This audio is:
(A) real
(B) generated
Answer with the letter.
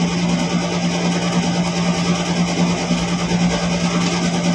A